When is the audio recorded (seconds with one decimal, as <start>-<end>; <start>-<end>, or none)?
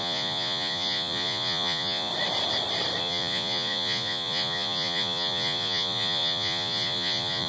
2.1-3.0